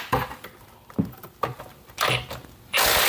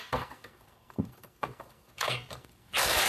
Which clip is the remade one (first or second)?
second